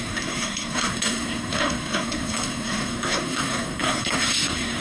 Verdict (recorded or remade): remade